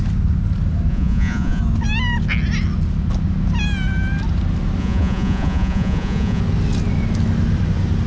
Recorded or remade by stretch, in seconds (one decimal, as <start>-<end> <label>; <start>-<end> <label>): 0.0-0.9 recorded; 0.9-1.6 remade; 1.6-4.8 recorded; 4.8-6.4 remade; 6.4-8.1 recorded